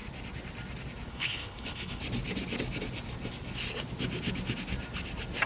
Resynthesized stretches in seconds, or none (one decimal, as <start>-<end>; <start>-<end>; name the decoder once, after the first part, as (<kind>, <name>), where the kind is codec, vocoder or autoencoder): 1.1-2.0 (codec, HILCodec)